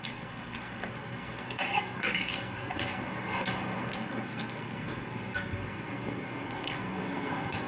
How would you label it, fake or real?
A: fake